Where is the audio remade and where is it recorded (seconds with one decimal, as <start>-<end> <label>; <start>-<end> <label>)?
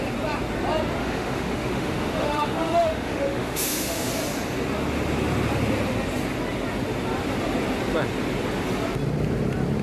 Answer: 0.0-1.0 recorded; 1.0-4.1 remade; 4.1-9.8 recorded